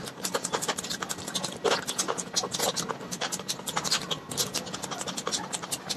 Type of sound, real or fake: real